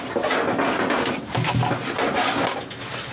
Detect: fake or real real